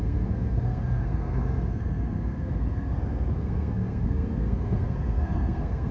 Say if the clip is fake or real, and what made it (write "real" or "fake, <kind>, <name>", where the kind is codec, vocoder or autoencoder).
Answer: fake, codec, SNAC